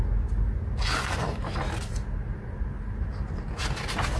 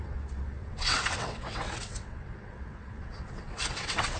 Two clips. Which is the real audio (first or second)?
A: first